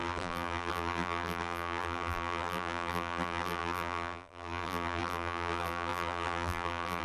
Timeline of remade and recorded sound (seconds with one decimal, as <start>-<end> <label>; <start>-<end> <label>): 0.0-7.0 remade